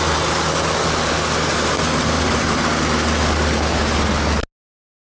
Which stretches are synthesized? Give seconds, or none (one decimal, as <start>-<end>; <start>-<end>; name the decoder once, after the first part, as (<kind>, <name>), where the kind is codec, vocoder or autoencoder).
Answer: 1.5-2.3 (vocoder, BigVGAN v2)